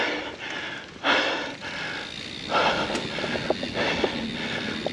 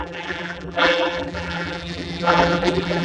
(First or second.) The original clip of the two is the first